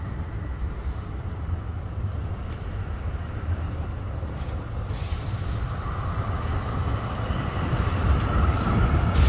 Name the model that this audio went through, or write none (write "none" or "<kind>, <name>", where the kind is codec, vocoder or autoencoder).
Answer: vocoder, BigVGAN v2